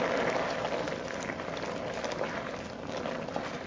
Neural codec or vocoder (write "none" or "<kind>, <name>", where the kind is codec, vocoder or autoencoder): none